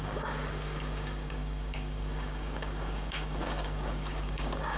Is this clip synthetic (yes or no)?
yes